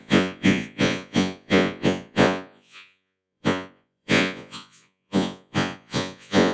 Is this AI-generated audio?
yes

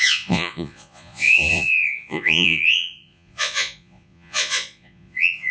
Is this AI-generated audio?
yes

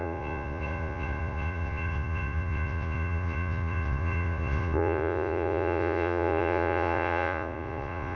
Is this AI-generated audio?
yes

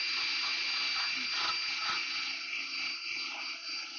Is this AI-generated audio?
no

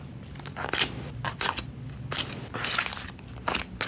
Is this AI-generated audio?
no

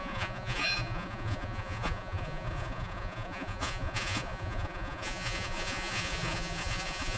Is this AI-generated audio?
yes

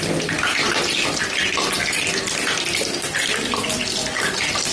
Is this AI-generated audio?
no